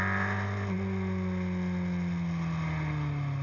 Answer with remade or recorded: recorded